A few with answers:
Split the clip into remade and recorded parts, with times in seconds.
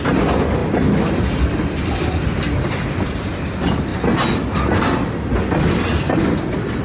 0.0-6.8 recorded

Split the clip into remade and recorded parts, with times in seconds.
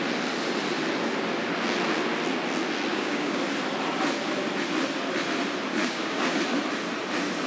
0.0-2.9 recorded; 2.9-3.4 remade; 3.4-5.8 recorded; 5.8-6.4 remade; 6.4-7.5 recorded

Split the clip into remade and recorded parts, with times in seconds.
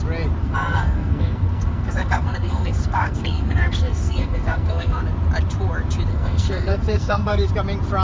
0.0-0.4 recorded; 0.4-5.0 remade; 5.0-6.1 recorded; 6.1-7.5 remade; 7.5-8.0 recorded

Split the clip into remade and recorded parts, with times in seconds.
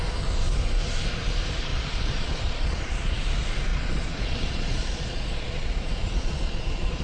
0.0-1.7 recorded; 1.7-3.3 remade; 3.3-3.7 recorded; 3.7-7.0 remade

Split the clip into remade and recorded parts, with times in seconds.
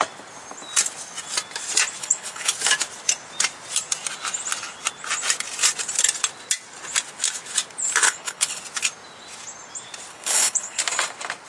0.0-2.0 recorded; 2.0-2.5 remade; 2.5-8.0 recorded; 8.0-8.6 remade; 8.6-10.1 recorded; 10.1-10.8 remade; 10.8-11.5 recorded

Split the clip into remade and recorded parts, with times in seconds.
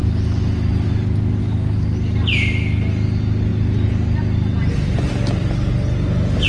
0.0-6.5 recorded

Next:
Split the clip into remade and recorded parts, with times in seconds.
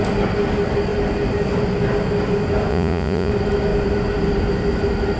0.0-2.7 recorded; 2.7-3.3 remade; 3.3-5.2 recorded